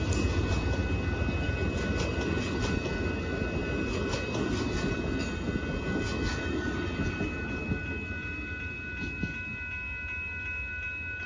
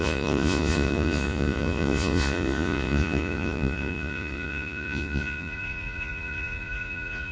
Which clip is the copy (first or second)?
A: second